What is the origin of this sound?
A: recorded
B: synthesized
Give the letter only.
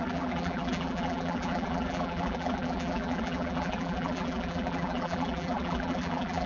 B